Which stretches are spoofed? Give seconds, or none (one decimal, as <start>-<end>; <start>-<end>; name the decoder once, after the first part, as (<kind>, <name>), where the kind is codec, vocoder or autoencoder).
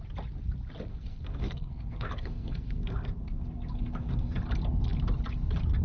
0.9-4.4 (codec, SNAC)